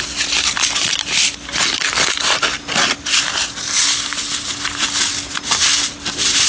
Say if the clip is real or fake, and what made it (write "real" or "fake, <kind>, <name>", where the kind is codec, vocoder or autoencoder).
real